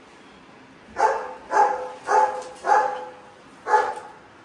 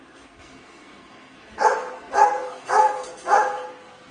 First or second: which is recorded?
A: first